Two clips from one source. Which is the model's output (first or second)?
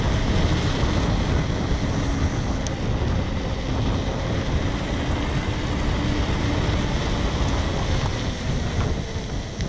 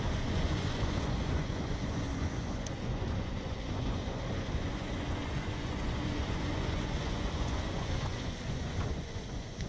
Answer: second